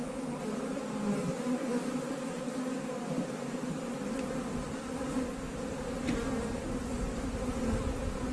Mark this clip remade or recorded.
recorded